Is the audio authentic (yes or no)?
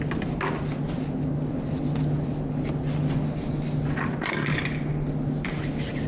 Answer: yes